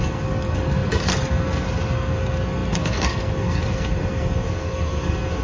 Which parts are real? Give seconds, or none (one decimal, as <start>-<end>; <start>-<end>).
none